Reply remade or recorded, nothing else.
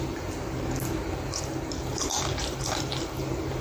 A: remade